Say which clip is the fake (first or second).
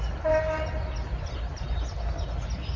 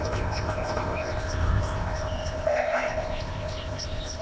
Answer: second